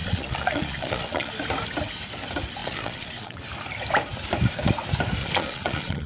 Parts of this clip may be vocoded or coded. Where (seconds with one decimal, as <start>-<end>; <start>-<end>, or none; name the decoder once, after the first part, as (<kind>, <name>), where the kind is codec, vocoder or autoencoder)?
0.0-1.3 (vocoder, Vocos); 2.6-3.4; 5.2-6.1